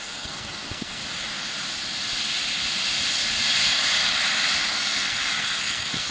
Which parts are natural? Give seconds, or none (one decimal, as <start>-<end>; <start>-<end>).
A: 1.0-4.7